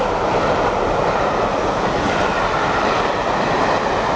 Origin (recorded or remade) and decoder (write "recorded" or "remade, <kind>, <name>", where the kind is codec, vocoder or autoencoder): remade, vocoder, BigVGAN v2